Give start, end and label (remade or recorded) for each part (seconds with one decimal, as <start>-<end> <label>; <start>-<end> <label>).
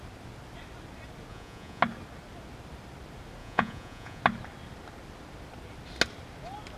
0.0-1.3 recorded; 1.3-1.8 remade; 1.8-3.4 recorded; 3.4-4.2 remade; 4.2-6.8 recorded